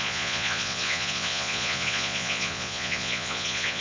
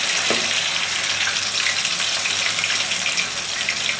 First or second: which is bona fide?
second